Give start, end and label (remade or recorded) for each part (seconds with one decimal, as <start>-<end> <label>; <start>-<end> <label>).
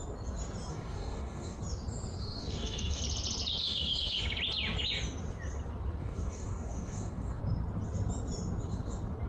0.0-0.7 recorded; 0.7-1.6 remade; 1.6-2.2 recorded; 2.2-3.0 remade; 3.0-3.6 recorded; 3.6-4.2 remade; 4.2-6.0 recorded; 6.0-7.4 remade; 7.4-9.3 recorded